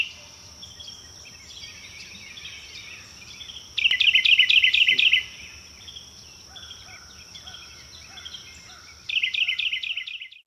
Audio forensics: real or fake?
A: real